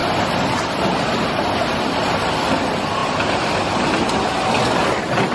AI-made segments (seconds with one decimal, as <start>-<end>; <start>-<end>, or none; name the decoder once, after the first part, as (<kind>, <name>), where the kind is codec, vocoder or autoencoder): none